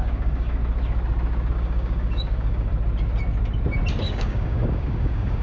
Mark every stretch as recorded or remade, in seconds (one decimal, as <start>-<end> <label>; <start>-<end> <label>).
0.0-0.6 remade; 0.6-1.5 recorded; 1.5-2.7 remade; 2.7-4.0 recorded; 4.0-5.4 remade